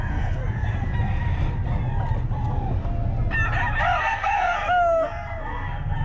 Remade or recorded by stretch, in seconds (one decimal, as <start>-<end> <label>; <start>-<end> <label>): 0.0-0.4 remade; 0.4-4.0 recorded; 4.0-6.0 remade